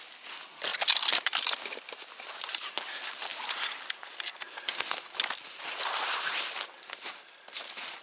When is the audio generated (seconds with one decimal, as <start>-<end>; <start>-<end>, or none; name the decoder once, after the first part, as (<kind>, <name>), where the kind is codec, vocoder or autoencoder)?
none